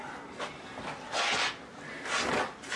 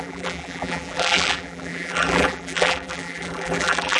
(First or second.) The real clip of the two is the first